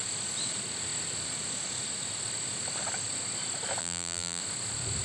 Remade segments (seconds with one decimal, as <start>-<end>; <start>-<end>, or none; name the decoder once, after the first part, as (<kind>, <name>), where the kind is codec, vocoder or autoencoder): 3.8-4.4 (vocoder, BigVGAN v2)

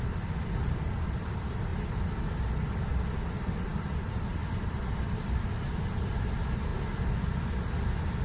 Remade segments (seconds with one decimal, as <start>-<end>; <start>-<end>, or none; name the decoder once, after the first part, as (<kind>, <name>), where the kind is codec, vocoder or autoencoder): 0.0-1.7 (vocoder, BigVGAN v2); 3.4-8.2

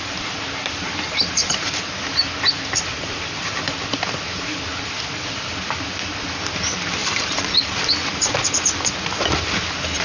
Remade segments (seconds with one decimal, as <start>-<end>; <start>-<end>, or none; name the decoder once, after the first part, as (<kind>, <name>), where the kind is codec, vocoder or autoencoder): 7.0-7.9 (vocoder, BigVGAN v2)

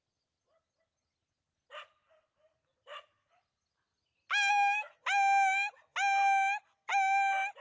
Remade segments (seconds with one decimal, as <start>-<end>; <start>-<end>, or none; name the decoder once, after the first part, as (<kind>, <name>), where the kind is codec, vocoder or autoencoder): none

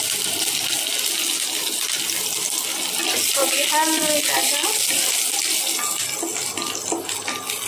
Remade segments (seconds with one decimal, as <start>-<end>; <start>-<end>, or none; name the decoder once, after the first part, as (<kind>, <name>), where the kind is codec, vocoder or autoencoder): none

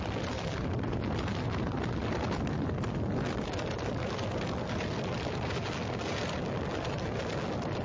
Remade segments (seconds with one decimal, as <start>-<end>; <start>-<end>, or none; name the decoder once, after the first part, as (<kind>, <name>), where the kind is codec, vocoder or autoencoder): none

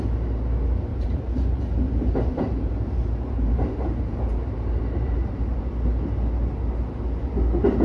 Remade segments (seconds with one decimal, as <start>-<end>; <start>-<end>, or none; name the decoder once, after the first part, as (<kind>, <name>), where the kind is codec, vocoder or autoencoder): 0.9-5.6 (vocoder, BigVGAN v2)